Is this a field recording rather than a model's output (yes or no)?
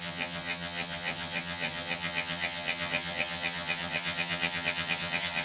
no